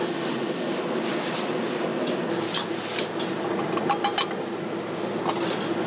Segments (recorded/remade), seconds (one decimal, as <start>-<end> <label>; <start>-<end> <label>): 0.0-5.9 recorded